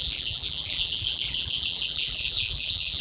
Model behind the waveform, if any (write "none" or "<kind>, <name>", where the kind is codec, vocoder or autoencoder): vocoder, BigVGAN v2